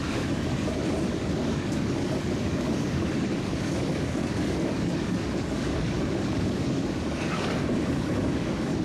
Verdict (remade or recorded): remade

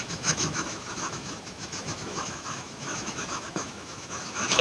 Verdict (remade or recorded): remade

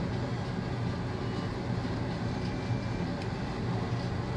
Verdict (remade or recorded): recorded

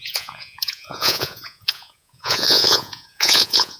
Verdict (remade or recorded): remade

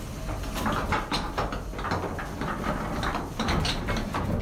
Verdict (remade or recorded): recorded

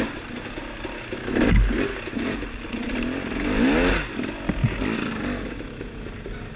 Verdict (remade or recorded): recorded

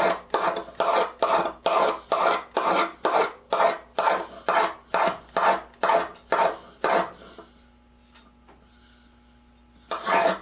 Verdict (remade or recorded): recorded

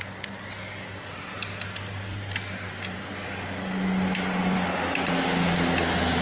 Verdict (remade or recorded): recorded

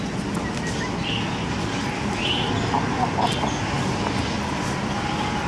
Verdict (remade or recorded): recorded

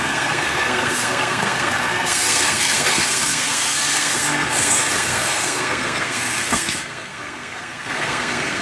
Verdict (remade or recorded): remade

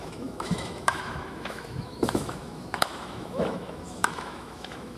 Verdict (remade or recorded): remade